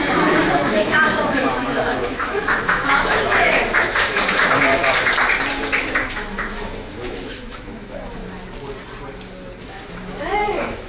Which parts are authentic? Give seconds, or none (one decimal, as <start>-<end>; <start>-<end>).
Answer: 4.8-5.8; 8.2-9.6